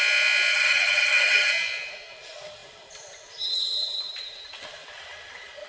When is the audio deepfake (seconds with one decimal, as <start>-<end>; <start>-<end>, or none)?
0.5-1.5